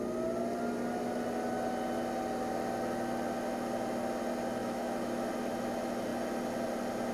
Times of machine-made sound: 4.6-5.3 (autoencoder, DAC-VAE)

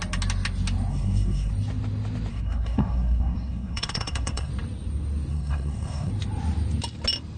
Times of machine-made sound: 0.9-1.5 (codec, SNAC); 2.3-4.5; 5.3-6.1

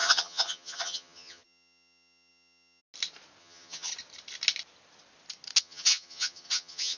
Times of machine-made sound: 0.0-2.8 (vocoder, HiFi-GAN); 3.4-3.9; 5.6-7.0

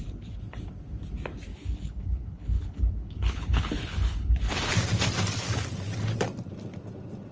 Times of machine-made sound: 1.5-4.7 (codec, HILCodec)

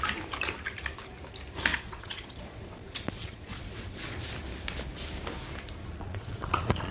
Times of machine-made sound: 1.7-4.3 (vocoder, Vocos); 5.8-6.9